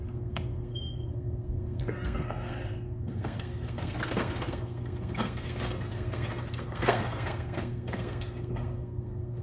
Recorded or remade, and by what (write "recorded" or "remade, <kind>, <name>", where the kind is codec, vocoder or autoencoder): remade, codec, SNAC